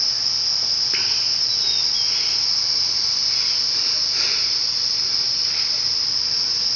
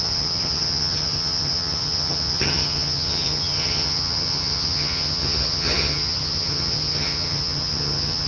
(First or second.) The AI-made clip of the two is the second